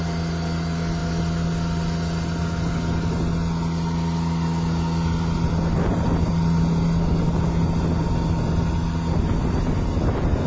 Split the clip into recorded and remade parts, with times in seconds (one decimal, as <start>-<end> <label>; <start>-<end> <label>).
0.0-10.5 recorded